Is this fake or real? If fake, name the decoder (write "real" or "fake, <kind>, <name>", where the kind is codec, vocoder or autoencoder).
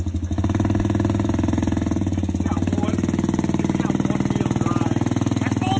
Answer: real